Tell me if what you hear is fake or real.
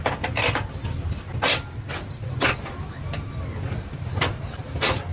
real